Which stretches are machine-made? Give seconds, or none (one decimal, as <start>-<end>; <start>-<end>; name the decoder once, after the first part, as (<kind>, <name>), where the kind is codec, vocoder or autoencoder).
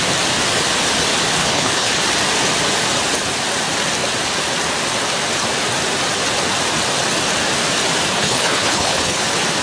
1.4-2.0 (codec, HILCodec); 8.1-9.2